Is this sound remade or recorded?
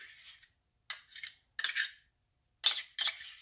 recorded